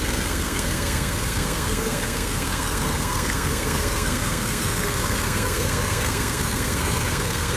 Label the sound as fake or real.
fake